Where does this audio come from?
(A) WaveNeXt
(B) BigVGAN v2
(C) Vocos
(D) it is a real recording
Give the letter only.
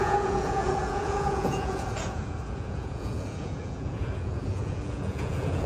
C